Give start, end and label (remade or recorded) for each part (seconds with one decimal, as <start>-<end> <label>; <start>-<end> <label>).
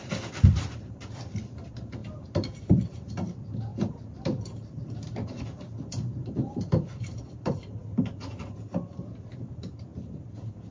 0.0-2.0 remade; 2.0-2.6 recorded; 2.6-10.7 remade